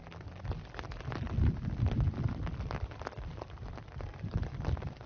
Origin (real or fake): real